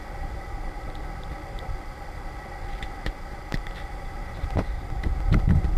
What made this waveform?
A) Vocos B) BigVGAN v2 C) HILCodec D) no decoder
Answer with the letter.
D